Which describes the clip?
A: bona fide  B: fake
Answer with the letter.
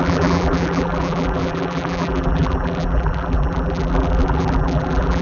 B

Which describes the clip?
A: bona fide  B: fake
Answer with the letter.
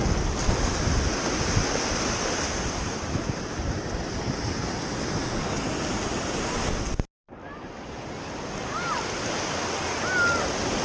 A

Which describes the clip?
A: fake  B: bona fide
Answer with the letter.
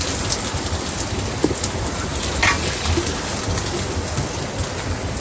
B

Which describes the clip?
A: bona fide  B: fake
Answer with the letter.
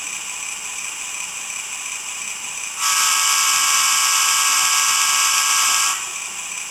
A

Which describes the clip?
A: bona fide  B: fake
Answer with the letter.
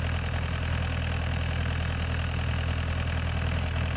A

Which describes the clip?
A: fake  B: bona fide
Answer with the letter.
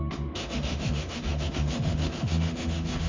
A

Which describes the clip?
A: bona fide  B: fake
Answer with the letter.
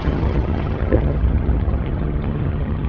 B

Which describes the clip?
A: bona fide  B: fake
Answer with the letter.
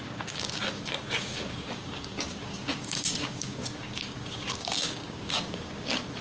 B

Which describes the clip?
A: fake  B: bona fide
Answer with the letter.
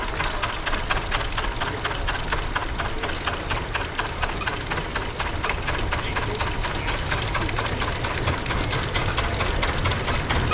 B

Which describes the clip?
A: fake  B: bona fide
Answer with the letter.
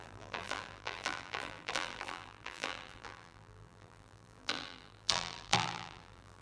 A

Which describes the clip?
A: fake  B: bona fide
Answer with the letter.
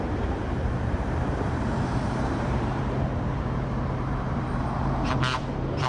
A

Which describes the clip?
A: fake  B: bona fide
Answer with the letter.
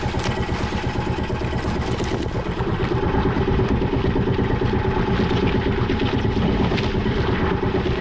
B